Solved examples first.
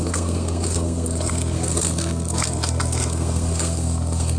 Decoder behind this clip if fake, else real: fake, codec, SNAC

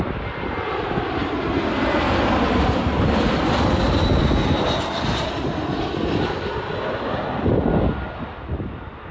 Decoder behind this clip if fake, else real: real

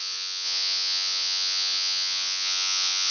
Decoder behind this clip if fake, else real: fake, vocoder, Vocos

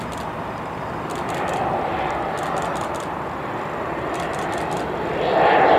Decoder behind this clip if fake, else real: real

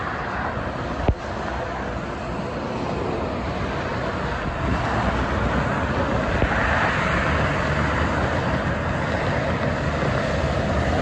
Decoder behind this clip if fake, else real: real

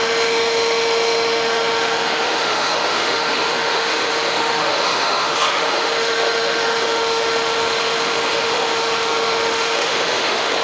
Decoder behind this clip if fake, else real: fake, autoencoder, DAC-VAE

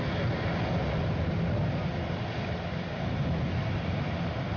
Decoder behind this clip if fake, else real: real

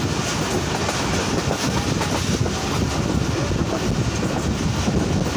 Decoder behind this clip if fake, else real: real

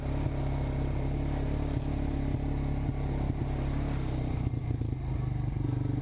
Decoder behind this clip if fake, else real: real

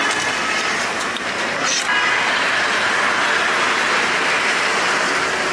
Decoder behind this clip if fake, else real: real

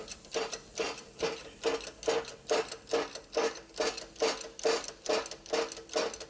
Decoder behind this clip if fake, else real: real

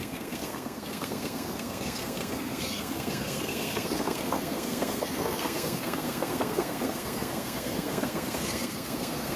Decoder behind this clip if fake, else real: fake, codec, SNAC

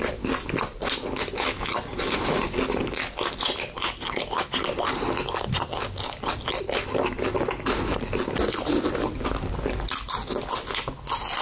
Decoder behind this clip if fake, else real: real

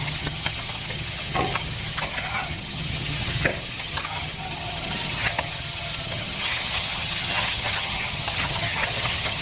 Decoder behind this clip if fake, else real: fake, vocoder, HiFi-GAN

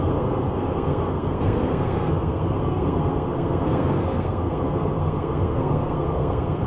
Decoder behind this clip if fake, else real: fake, codec, SNAC